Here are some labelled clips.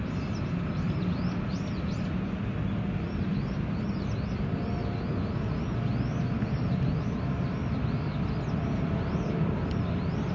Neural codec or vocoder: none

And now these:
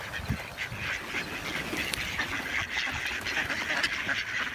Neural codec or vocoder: none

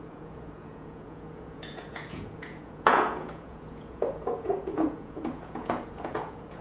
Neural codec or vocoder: vocoder, Vocos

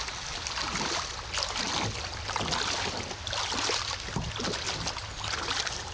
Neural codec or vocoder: none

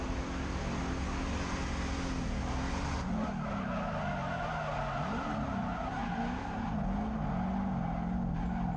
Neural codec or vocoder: none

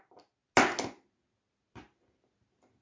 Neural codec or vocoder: none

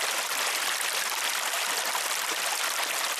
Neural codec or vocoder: none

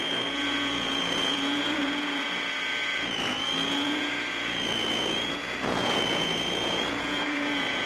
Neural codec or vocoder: vocoder, Vocos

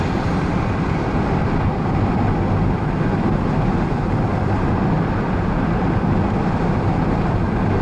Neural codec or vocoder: none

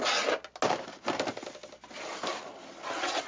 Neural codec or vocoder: none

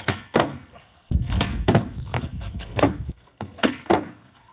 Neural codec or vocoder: codec, SNAC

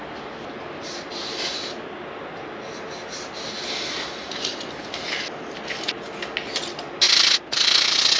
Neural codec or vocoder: none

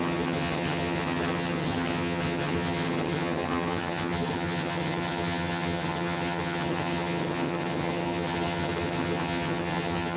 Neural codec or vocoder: vocoder, HiFi-GAN